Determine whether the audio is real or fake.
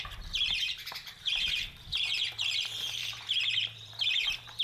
fake